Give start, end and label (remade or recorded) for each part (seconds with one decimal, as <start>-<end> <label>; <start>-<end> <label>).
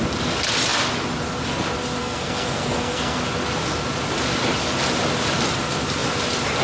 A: 0.0-2.0 recorded; 2.0-3.2 remade; 3.2-6.6 recorded